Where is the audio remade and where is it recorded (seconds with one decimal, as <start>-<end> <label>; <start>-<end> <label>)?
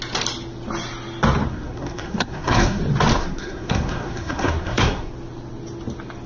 0.0-1.5 recorded; 1.5-2.8 remade; 2.8-3.2 recorded; 3.2-5.1 remade; 5.1-6.3 recorded